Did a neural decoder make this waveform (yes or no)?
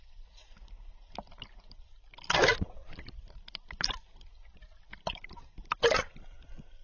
no